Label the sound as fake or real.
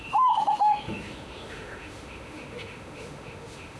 fake